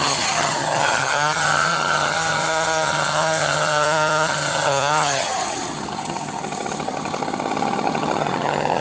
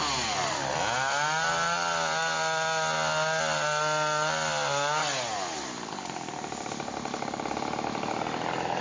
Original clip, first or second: second